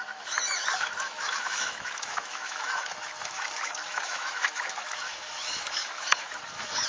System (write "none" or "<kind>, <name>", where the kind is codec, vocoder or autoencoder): autoencoder, DAC-VAE